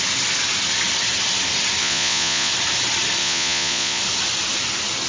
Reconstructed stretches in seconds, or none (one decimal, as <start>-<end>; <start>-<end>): 1.8-2.5; 3.2-4.0